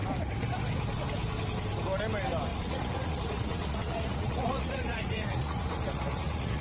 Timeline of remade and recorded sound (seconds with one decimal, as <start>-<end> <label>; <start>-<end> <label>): 0.0-2.5 recorded; 2.5-6.6 remade